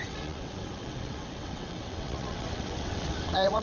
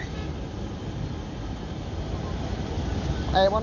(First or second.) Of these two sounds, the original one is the second